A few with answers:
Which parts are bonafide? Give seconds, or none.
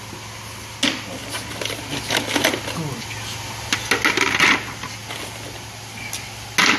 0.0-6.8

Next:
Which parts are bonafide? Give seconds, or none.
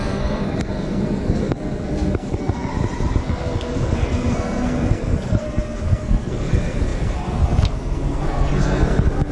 2.7-3.2